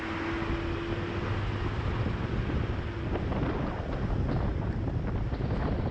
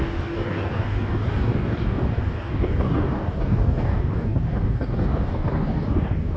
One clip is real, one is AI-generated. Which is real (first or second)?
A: first